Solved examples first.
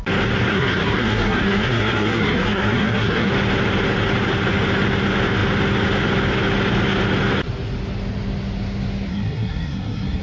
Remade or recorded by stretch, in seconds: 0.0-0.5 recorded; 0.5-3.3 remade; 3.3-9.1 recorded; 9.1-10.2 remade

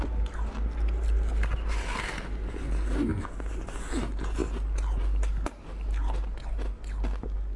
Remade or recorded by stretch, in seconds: 0.0-7.6 recorded

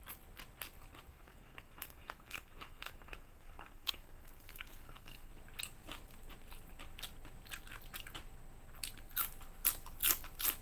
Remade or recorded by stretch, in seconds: 0.0-1.1 recorded; 1.1-5.3 remade; 5.3-10.6 recorded

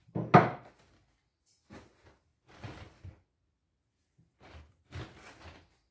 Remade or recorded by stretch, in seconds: 0.0-5.9 recorded

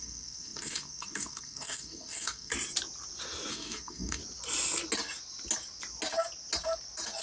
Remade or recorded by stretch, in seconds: 0.0-2.5 remade; 2.5-3.5 recorded; 3.5-4.2 remade; 4.2-7.2 recorded

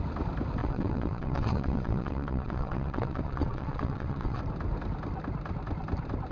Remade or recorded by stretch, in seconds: 0.0-0.6 recorded; 0.6-4.4 remade; 4.4-6.3 recorded